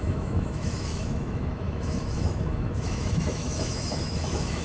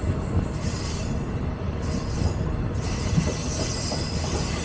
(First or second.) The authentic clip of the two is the second